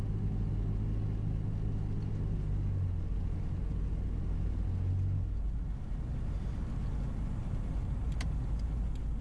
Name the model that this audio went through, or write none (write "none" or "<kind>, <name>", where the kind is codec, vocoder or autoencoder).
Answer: none